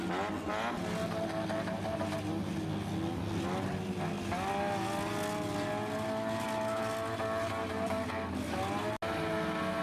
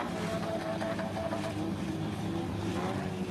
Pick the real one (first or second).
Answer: first